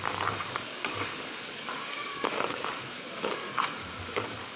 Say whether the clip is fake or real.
fake